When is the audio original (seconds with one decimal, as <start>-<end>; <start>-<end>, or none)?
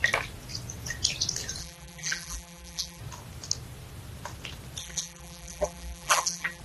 0.0-1.6; 3.0-4.8